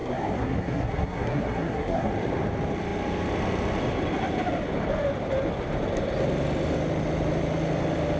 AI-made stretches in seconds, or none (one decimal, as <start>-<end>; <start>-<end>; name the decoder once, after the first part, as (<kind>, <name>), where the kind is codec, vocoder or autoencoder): 0.0-2.1 (codec, SNAC)